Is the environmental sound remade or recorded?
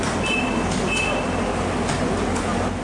recorded